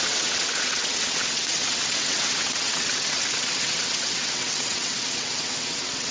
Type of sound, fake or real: fake